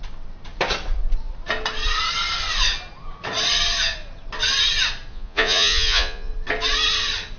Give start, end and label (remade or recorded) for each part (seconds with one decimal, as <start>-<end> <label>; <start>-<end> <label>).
0.0-5.1 recorded; 5.1-6.3 remade; 6.3-7.4 recorded